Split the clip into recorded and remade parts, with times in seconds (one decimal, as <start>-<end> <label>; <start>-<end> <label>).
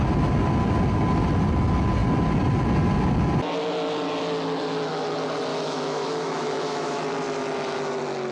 0.0-5.5 recorded; 5.5-7.0 remade; 7.0-8.3 recorded